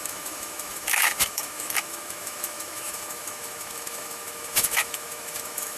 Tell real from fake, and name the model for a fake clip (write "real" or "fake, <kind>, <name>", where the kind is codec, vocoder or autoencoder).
fake, autoencoder, DAC-VAE